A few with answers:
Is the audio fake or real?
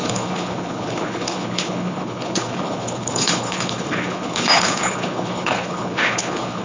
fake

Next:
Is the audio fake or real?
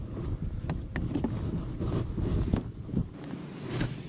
real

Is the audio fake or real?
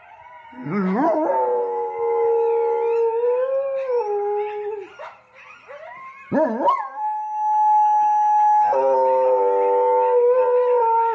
real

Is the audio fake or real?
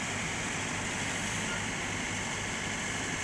fake